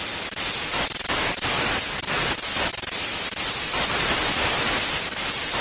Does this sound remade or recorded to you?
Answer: recorded